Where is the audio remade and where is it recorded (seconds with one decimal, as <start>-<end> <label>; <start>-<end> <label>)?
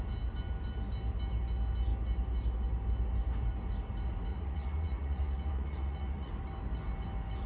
0.0-4.3 recorded; 4.3-6.3 remade; 6.3-7.5 recorded